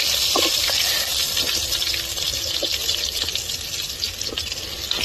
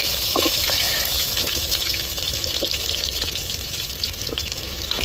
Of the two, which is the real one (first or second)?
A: first